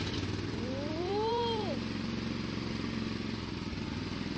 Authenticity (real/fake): fake